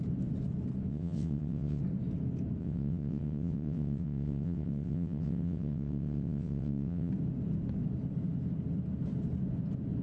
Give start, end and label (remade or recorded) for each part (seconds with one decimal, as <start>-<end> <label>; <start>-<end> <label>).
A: 0.0-0.9 recorded; 0.9-1.8 remade; 1.8-2.6 recorded; 2.6-7.1 remade; 7.1-10.0 recorded

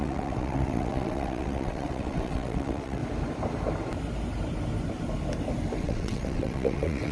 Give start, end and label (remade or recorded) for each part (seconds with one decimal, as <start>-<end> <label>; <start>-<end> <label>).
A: 0.0-3.0 remade; 3.0-5.8 recorded; 5.8-7.1 remade

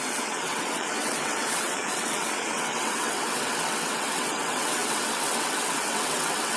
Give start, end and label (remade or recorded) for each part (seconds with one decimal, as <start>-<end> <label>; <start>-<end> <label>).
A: 0.0-6.6 remade

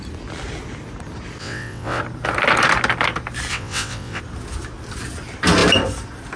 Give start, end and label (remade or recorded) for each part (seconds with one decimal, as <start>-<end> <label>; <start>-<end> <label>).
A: 0.0-1.4 recorded; 1.4-2.0 remade; 2.0-3.5 recorded; 3.5-4.2 remade; 4.2-6.4 recorded

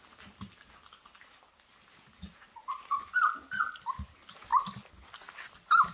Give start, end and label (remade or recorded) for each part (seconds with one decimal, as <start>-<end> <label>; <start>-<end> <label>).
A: 0.0-5.9 recorded

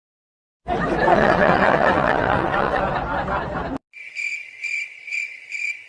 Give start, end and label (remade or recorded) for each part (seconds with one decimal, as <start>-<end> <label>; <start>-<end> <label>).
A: 0.0-1.1 recorded; 1.1-2.8 remade; 2.8-5.9 recorded

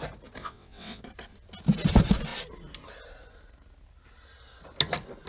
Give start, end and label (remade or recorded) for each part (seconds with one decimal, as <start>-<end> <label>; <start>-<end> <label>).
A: 0.0-0.4 recorded; 0.4-1.0 remade; 1.0-5.3 recorded